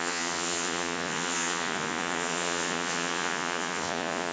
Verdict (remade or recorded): remade